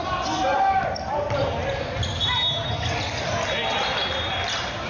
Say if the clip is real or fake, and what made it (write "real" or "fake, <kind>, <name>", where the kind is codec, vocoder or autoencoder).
real